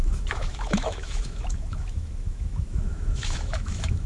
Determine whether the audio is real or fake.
fake